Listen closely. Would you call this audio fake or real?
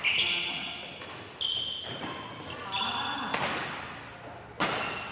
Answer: real